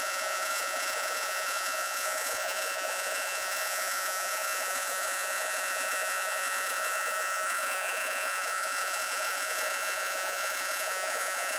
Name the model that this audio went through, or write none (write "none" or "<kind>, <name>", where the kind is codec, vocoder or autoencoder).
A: vocoder, Vocos